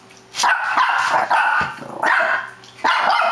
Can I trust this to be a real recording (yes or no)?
yes